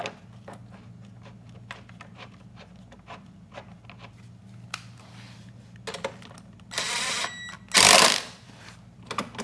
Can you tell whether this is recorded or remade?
recorded